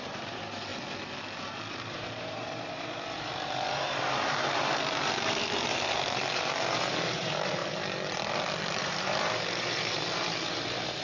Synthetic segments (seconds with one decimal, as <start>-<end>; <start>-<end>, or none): 0.0-0.7; 1.7-7.6; 8.8-11.0